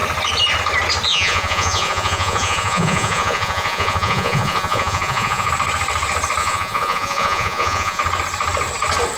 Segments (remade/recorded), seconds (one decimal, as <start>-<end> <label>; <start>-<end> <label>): 0.0-1.1 recorded; 1.1-5.5 remade; 5.5-6.4 recorded; 6.4-8.0 remade; 8.0-9.2 recorded